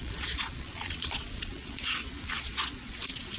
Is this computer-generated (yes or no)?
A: yes